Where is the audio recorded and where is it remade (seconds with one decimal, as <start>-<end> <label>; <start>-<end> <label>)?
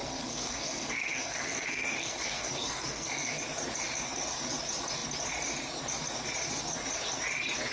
0.0-3.4 remade; 3.4-7.7 recorded